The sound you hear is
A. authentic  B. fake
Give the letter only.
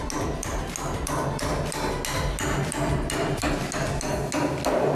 A